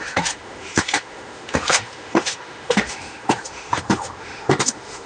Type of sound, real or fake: fake